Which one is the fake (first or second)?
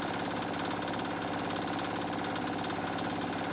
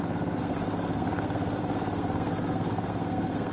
second